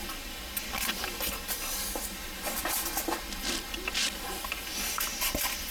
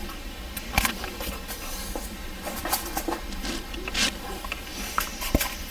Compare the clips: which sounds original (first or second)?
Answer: first